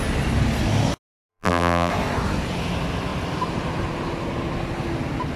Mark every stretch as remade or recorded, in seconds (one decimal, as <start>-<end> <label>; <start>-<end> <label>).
0.0-1.3 recorded; 1.3-1.9 remade; 1.9-5.4 recorded